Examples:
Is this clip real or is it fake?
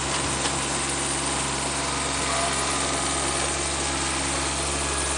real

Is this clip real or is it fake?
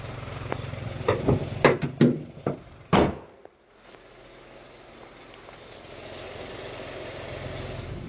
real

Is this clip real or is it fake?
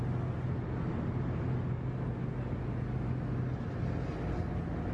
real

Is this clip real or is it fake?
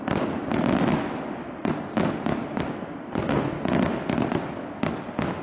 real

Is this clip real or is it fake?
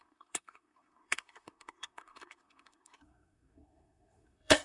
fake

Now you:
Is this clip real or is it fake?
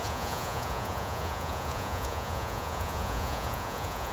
fake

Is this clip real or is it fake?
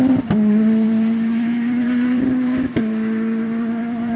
fake